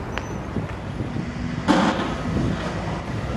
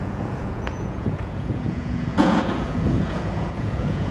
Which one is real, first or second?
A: first